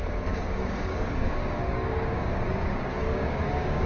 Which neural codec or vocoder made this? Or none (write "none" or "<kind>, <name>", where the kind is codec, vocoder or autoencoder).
codec, DAC